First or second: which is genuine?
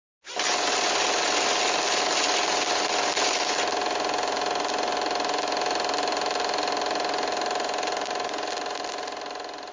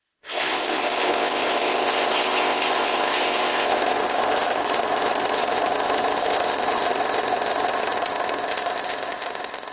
first